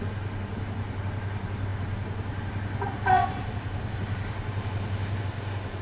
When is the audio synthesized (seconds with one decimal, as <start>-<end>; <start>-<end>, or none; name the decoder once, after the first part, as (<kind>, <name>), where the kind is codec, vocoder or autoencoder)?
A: none